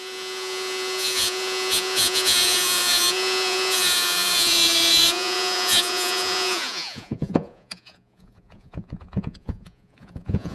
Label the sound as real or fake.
fake